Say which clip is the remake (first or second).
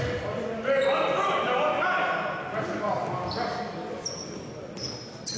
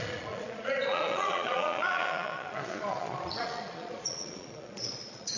second